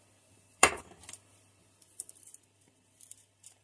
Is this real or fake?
fake